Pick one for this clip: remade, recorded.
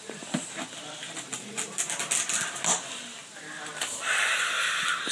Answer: recorded